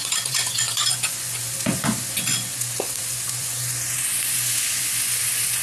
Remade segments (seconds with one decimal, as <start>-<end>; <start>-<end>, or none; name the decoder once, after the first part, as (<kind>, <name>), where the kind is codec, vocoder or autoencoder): 0.0-5.6 (vocoder, Vocos)